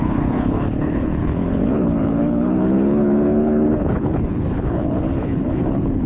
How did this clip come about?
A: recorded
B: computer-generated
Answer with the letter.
B